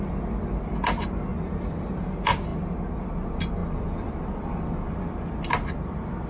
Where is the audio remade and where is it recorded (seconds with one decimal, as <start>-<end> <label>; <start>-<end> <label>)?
0.0-1.3 recorded; 1.3-1.9 remade; 1.9-3.6 recorded; 3.6-6.3 remade